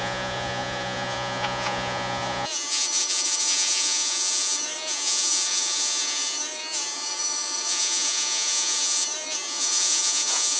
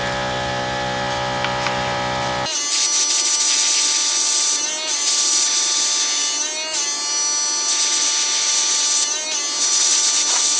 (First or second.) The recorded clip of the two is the second